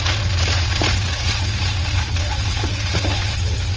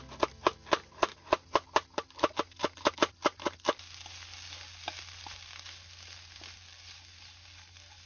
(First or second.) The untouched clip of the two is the second